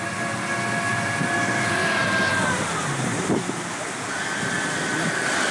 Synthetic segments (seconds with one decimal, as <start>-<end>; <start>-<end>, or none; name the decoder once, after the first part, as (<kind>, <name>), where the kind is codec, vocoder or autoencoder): none